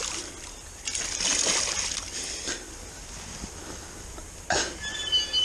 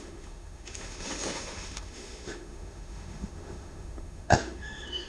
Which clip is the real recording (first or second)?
first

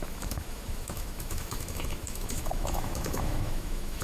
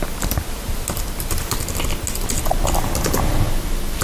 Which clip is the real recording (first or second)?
second